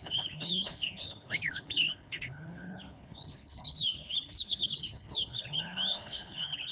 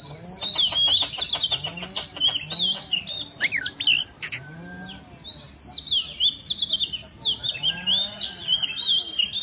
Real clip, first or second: second